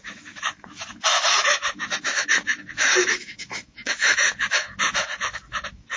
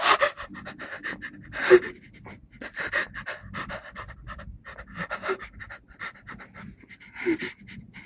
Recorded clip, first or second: second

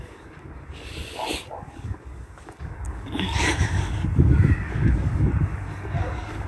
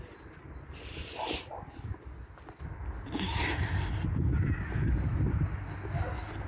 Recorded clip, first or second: second